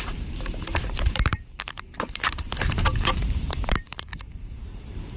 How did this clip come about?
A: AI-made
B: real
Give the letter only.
A